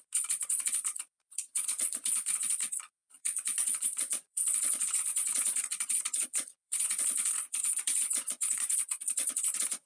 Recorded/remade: remade